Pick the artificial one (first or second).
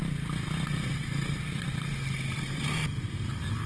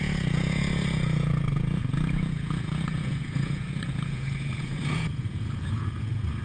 second